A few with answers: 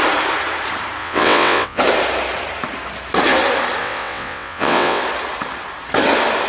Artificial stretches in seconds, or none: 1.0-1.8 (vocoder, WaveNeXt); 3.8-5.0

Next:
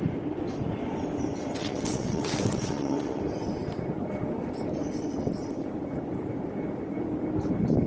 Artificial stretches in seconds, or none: 1.6-3.2 (vocoder, WaveNeXt)